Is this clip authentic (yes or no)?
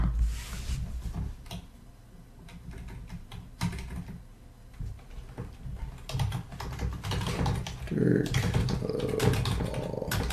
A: yes